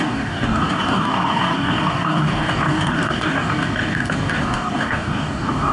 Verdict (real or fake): fake